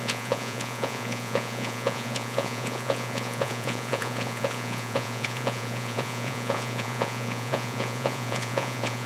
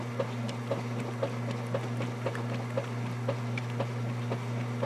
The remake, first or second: first